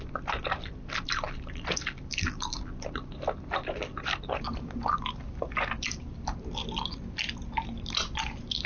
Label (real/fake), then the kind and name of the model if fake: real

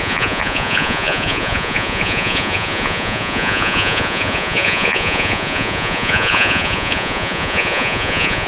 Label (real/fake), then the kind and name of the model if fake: fake, vocoder, Vocos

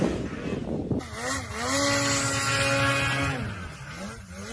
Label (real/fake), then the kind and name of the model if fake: real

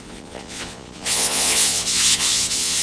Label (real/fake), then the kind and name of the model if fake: fake, vocoder, Vocos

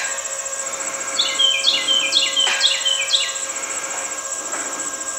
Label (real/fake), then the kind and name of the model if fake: real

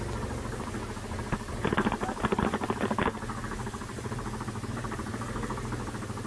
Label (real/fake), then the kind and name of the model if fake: real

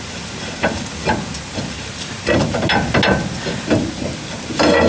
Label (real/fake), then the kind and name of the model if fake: real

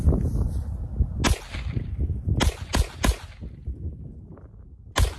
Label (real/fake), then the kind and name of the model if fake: real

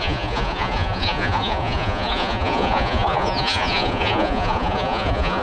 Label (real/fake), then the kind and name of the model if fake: fake, vocoder, Vocos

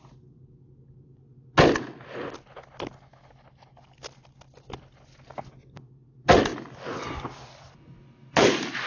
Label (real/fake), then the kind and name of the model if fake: real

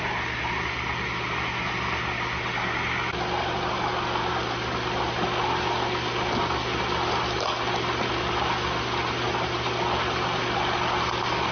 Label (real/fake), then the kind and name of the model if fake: real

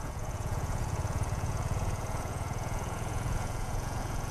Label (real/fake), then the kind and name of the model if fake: fake, vocoder, Vocos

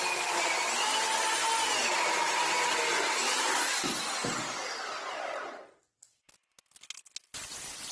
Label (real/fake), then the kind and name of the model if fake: real